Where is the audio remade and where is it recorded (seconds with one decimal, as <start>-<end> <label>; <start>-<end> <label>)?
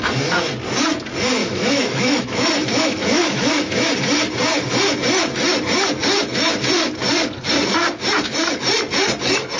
0.0-1.4 recorded; 1.4-3.9 remade; 3.9-9.6 recorded